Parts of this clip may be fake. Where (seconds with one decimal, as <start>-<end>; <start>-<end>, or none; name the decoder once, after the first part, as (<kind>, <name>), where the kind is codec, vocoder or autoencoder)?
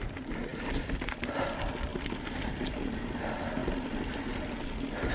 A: none